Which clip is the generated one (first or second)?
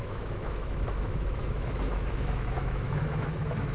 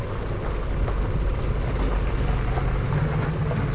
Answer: first